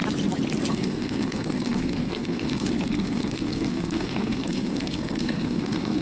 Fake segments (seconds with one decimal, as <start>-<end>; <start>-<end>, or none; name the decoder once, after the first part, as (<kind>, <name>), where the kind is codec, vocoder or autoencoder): 0.7-6.0 (codec, SNAC)